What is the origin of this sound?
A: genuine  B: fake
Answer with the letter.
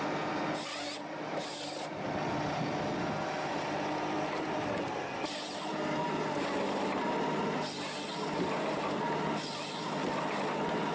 A